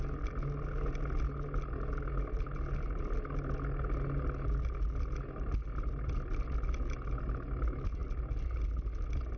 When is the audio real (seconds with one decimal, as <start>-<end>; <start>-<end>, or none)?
0.0-9.4